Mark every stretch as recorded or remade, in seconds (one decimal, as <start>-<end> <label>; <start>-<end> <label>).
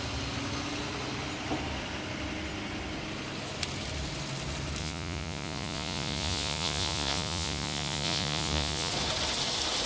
0.0-4.8 recorded; 4.8-8.9 remade; 8.9-9.9 recorded